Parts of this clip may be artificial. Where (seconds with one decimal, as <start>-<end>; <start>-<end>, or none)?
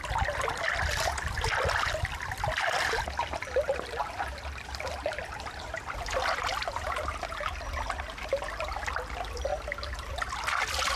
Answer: none